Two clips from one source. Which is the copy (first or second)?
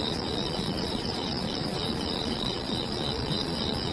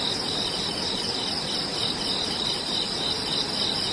first